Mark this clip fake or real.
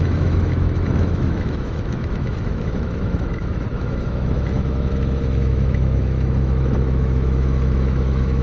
fake